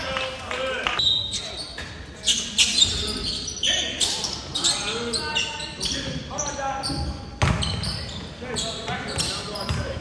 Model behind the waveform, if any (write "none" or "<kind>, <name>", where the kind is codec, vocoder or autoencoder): none